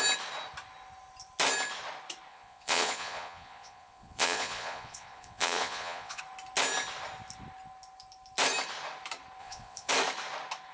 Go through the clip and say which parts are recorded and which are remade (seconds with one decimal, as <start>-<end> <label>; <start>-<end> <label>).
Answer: 0.0-2.3 recorded; 2.3-6.2 remade; 6.2-9.4 recorded; 9.4-9.9 remade; 9.9-10.7 recorded